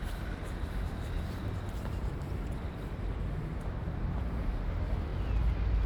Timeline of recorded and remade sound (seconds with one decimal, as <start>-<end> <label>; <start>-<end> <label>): 0.0-5.1 remade; 5.1-5.9 recorded

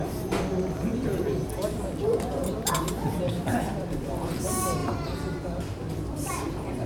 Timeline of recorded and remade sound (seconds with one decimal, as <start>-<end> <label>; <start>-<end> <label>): 0.0-0.9 recorded; 0.9-2.7 remade; 2.7-3.3 recorded; 3.3-4.3 remade; 4.3-4.8 recorded; 4.8-6.9 remade

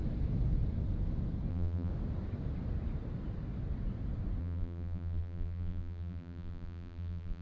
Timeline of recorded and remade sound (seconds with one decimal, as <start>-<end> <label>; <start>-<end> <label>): 0.0-1.5 recorded; 1.5-1.9 remade; 1.9-4.4 recorded; 4.4-7.4 remade

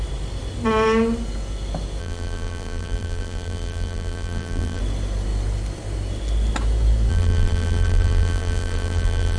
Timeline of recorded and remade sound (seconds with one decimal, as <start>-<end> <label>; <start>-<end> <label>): 0.0-2.0 recorded; 2.0-4.8 remade; 4.8-7.1 recorded; 7.1-9.4 remade

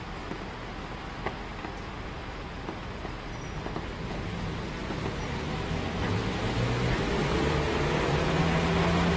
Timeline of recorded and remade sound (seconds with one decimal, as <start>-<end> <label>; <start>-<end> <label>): 0.0-1.5 recorded; 1.5-6.3 remade; 6.3-7.2 recorded; 7.2-8.4 remade; 8.4-9.2 recorded

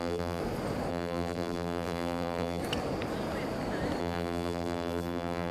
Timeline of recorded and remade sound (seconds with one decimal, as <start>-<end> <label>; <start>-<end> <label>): 0.0-0.4 remade; 0.4-0.9 recorded; 0.9-2.6 remade; 2.6-4.0 recorded; 4.0-5.5 remade

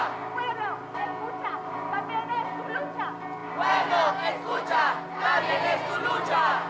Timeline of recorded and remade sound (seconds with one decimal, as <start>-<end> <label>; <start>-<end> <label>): 0.0-6.7 recorded